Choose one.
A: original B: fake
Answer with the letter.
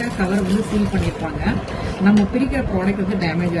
A